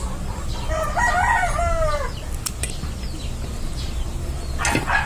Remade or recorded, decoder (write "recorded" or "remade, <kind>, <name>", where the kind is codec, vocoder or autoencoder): recorded